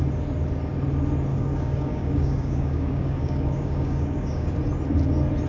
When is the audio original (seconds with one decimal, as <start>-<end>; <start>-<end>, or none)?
0.0-1.3; 4.6-5.5